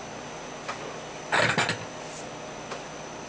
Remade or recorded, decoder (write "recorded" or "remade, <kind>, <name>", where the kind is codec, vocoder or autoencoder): recorded